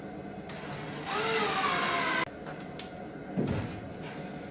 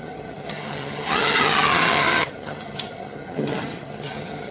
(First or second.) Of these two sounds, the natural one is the first